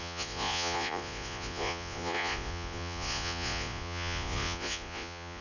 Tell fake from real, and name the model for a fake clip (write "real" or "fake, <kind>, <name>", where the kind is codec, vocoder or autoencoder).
fake, vocoder, Vocos